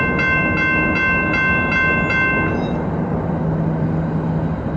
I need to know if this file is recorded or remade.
recorded